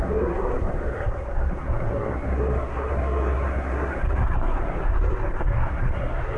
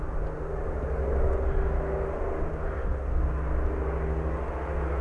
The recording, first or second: second